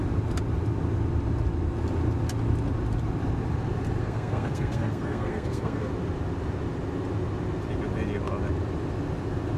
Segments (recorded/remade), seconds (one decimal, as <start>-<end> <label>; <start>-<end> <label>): 0.0-4.0 recorded; 4.0-5.9 remade; 5.9-9.6 recorded